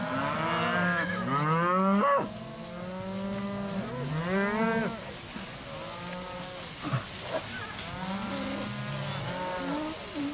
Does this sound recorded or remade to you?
recorded